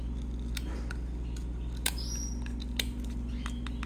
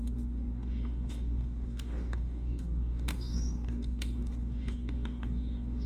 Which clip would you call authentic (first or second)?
first